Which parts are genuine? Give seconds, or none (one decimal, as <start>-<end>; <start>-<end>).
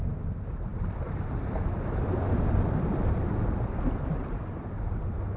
none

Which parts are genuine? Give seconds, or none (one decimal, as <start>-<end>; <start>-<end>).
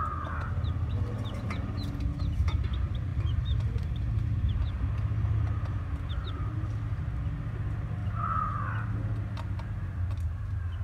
0.0-3.1; 4.8-8.0; 8.6-10.8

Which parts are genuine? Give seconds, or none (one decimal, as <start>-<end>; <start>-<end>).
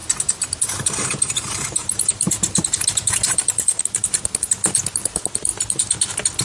3.8-6.4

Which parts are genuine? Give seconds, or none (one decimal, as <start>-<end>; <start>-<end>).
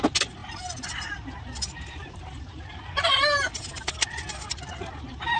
0.0-5.4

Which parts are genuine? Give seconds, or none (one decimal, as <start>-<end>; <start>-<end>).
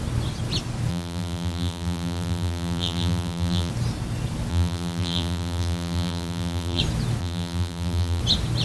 0.0-0.9; 3.7-4.5; 6.8-7.2; 8.2-8.6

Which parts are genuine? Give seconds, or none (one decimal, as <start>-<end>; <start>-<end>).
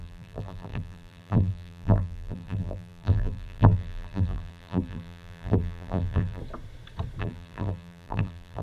6.4-7.2